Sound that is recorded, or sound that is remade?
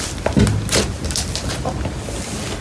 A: recorded